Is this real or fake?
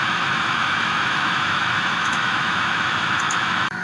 fake